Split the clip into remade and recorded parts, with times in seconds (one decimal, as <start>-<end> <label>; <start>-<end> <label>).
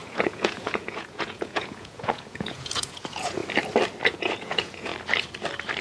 0.0-3.4 remade; 3.4-4.1 recorded; 4.1-4.9 remade; 4.9-5.8 recorded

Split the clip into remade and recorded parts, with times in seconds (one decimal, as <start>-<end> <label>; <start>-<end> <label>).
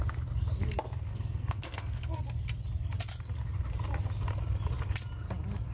0.0-1.1 recorded; 1.1-2.2 remade; 2.2-5.7 recorded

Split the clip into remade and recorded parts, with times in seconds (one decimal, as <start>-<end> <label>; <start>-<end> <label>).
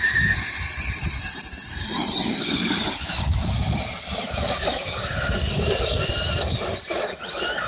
0.0-1.6 recorded; 1.6-5.5 remade; 5.5-7.7 recorded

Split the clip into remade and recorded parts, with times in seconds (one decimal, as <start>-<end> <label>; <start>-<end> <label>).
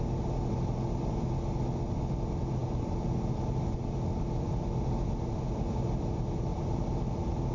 0.0-7.5 recorded